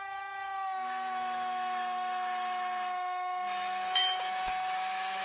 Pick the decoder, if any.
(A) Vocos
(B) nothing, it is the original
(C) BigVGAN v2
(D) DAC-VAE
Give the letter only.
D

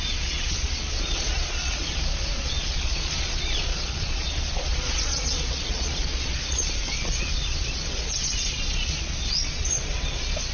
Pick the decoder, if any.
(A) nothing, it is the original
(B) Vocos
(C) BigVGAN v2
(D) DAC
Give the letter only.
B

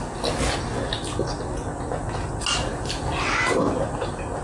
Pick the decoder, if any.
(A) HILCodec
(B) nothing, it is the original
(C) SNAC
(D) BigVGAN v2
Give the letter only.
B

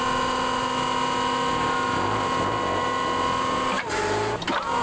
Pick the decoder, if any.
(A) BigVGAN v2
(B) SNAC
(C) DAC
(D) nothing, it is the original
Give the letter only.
D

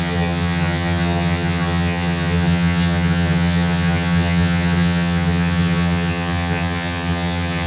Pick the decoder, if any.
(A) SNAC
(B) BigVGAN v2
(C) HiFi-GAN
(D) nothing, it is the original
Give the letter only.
C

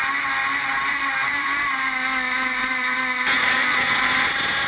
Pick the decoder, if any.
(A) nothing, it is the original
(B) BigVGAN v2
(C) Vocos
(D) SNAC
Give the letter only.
A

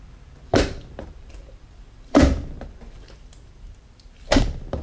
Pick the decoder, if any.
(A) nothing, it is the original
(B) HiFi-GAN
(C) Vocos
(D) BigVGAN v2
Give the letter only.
D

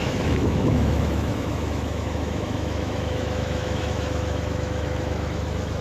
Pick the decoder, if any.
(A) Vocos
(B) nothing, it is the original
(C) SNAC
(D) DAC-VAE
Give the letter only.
D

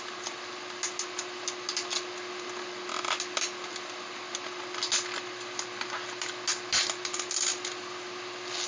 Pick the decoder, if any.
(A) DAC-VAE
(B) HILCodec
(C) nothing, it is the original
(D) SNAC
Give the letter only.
C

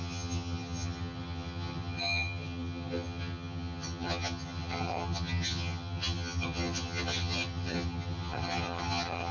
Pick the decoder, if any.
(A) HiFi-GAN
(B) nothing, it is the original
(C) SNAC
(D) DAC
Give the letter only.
A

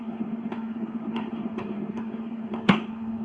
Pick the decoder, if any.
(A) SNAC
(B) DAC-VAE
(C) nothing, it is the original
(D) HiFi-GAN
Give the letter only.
A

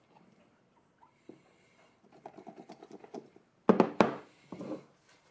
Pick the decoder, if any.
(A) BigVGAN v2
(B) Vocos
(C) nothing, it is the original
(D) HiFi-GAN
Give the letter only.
C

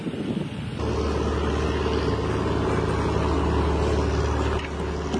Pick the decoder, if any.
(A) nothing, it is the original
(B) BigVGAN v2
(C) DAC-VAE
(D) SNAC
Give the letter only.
A